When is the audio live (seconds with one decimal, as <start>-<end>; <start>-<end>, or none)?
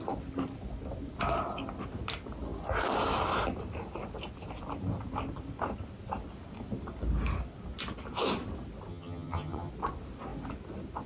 0.0-8.9; 9.7-11.1